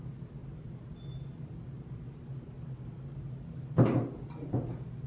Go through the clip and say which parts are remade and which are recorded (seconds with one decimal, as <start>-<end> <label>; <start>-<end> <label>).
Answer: 0.0-5.1 recorded